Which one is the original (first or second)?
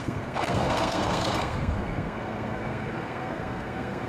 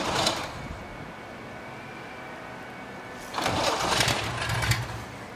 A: second